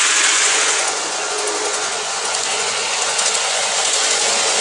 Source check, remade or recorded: remade